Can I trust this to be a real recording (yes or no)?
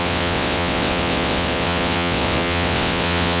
no